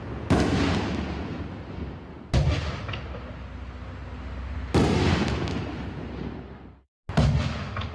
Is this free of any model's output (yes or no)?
yes